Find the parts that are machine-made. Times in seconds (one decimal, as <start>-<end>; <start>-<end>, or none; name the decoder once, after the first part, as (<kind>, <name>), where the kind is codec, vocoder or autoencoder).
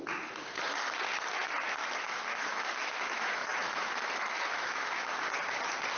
1.8-5.2 (autoencoder, DAC-VAE)